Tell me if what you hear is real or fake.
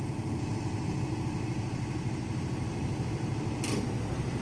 real